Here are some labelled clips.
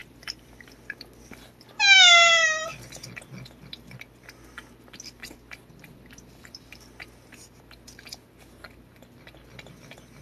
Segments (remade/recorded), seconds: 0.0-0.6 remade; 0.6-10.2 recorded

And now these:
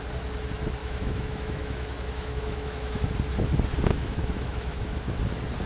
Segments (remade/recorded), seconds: 0.0-0.8 recorded; 0.8-3.1 remade; 3.1-3.9 recorded; 3.9-5.2 remade; 5.2-5.7 recorded

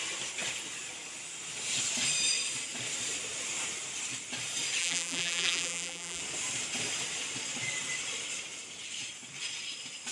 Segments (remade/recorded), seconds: 0.0-4.8 recorded; 4.8-6.2 remade; 6.2-10.1 recorded

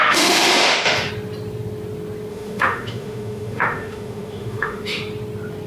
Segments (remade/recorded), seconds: 0.0-1.1 remade; 1.1-2.3 recorded; 2.3-5.0 remade; 5.0-5.7 recorded

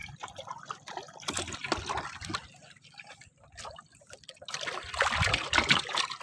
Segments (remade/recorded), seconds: 0.0-6.2 recorded

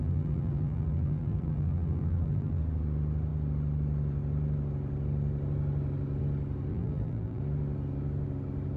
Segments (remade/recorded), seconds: 0.0-2.6 remade; 2.6-6.7 recorded; 6.7-7.4 remade; 7.4-8.8 recorded